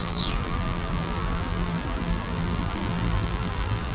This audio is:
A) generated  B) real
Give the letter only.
A